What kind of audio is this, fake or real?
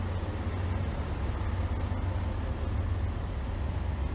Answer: real